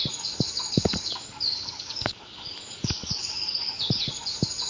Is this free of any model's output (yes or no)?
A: no